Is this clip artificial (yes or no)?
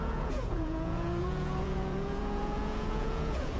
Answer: yes